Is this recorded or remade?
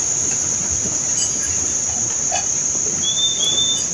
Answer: recorded